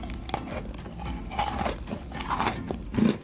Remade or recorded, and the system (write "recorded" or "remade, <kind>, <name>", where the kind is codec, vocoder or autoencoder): recorded